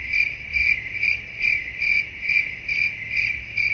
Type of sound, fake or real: real